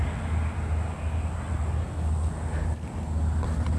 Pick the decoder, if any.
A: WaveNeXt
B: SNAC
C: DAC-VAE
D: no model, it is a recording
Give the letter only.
D